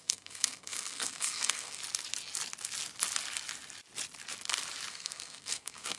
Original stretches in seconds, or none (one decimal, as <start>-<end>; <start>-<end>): 1.8-4.9